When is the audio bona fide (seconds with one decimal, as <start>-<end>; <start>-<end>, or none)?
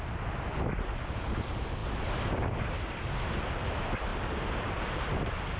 0.0-5.6